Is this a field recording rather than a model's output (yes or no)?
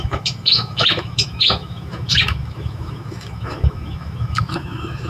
no